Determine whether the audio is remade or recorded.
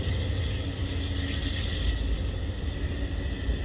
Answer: recorded